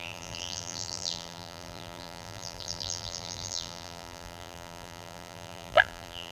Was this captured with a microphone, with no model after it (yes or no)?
no